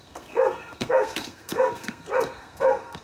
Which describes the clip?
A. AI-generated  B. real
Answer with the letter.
A